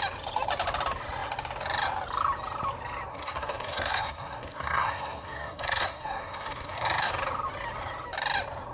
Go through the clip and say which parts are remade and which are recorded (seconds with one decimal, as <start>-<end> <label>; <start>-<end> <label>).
0.0-3.1 recorded; 3.1-7.1 remade; 7.1-8.7 recorded